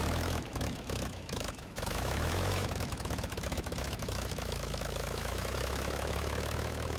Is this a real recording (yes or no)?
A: no